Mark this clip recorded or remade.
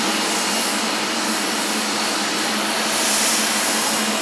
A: recorded